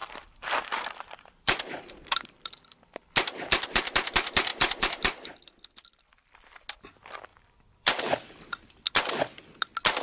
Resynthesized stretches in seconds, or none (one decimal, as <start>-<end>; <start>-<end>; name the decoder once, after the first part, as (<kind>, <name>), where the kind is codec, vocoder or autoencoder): 0.0-3.0 (vocoder, BigVGAN v2); 4.5-5.6; 7.3-8.7